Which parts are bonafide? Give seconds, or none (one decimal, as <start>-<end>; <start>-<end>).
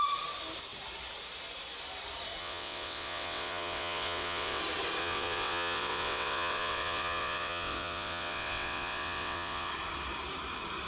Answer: 0.0-2.4; 4.6-5.0; 9.7-10.9